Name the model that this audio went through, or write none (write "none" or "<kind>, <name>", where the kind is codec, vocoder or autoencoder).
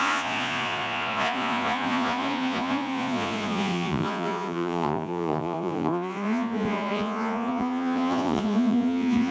vocoder, Vocos